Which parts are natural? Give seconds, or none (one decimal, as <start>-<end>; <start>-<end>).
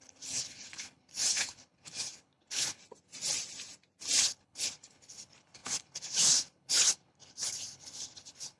2.8-4.2